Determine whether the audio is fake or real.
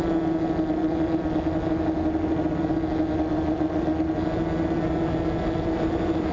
real